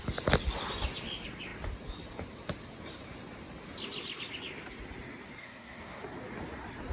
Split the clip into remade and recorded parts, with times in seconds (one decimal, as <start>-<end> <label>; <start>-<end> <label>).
0.0-5.4 recorded; 5.4-6.0 remade; 6.0-6.9 recorded